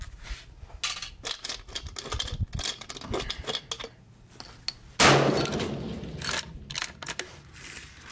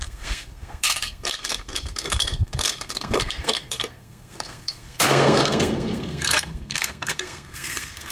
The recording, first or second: first